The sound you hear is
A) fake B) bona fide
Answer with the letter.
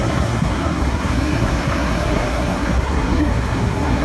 A